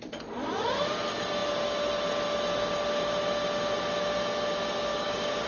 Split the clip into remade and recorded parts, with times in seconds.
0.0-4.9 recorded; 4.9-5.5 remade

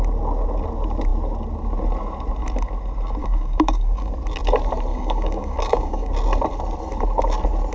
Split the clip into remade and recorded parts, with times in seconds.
0.0-3.2 recorded; 3.2-4.1 remade; 4.1-4.9 recorded; 4.9-6.1 remade; 6.1-7.7 recorded

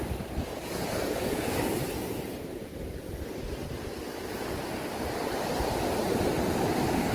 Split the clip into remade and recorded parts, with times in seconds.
0.0-0.5 recorded; 0.5-1.6 remade; 1.6-7.1 recorded

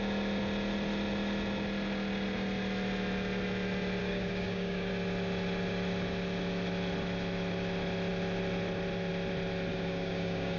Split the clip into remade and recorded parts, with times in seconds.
0.0-4.0 recorded; 4.0-4.9 remade; 4.9-9.7 recorded; 9.7-10.6 remade